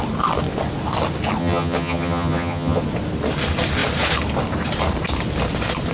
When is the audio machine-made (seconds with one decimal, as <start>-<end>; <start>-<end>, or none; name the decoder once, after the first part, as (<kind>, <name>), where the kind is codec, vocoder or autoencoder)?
1.4-2.8 (vocoder, HiFi-GAN)